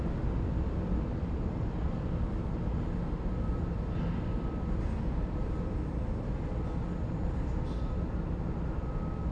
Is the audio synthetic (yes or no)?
no